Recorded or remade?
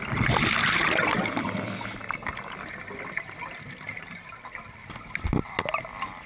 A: recorded